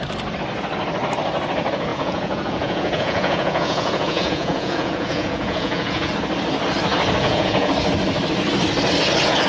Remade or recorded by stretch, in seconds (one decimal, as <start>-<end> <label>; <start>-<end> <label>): 0.0-1.9 recorded; 1.9-6.1 remade; 6.1-7.2 recorded; 7.2-7.7 remade; 7.7-9.5 recorded